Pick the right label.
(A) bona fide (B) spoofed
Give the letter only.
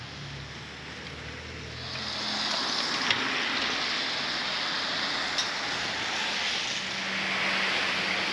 A